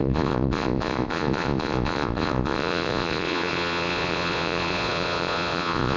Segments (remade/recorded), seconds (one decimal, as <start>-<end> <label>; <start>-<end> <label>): 0.0-6.0 remade